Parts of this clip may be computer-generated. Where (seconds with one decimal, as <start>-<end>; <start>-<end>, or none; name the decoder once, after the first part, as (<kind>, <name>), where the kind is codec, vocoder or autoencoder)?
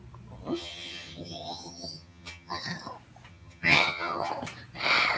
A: 0.5-2.6 (vocoder, HiFi-GAN); 3.3-4.3